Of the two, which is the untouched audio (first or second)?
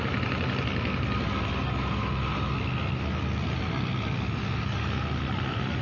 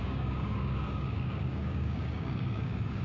first